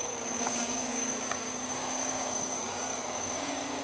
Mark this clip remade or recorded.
remade